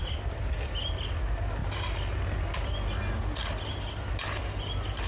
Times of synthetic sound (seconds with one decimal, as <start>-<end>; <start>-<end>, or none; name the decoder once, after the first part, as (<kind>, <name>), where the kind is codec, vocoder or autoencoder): none